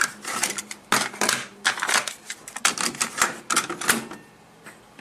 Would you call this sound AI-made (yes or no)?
no